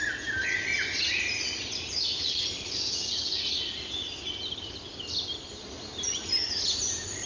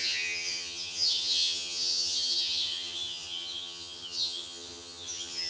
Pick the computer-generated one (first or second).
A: second